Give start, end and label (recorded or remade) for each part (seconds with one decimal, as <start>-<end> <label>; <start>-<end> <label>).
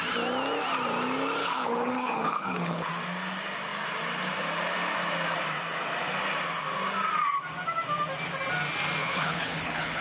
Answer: 0.0-1.4 recorded; 1.4-2.9 remade; 2.9-9.0 recorded; 9.0-10.0 remade